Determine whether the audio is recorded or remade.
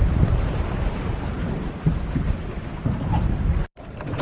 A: remade